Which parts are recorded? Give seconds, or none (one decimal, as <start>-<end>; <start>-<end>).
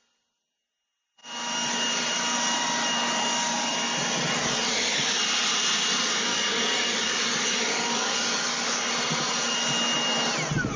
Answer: 0.0-4.7; 5.2-6.3; 8.9-10.8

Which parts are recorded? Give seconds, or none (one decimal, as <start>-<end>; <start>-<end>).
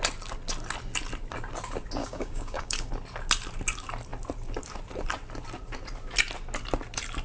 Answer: 0.0-2.0; 2.9-7.2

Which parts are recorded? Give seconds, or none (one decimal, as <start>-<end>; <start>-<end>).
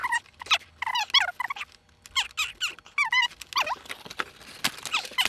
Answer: 0.0-5.3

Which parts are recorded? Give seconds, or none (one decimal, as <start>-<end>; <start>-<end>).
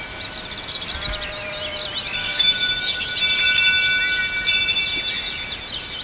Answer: 0.0-2.2; 3.1-6.0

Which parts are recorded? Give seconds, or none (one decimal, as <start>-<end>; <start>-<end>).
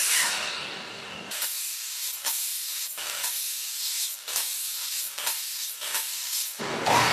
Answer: none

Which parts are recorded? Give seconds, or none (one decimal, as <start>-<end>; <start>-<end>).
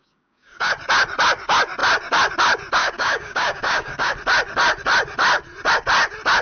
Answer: 0.7-2.8; 4.1-6.4